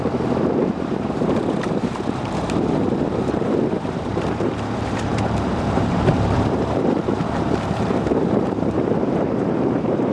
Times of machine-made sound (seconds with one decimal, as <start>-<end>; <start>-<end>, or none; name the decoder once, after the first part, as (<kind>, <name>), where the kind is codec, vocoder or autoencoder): 0.0-10.1 (vocoder, BigVGAN v2)